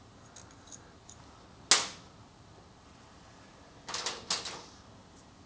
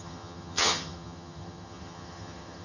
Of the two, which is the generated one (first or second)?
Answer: second